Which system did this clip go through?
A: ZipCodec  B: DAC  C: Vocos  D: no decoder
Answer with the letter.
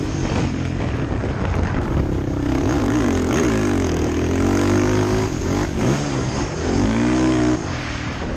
B